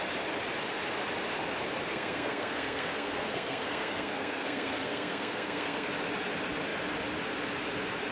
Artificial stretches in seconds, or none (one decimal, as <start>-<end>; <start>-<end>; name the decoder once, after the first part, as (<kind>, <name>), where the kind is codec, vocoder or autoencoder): 1.9-5.9 (codec, SNAC)